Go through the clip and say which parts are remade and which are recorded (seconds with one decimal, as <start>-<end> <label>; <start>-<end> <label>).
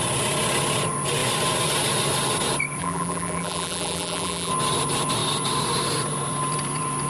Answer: 0.0-2.8 recorded; 2.8-4.5 remade; 4.5-7.1 recorded